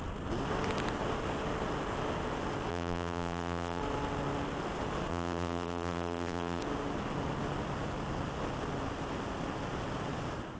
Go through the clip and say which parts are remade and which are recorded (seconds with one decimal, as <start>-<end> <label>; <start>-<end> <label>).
0.0-2.7 recorded; 2.7-3.8 remade; 3.8-5.1 recorded; 5.1-6.6 remade; 6.6-10.6 recorded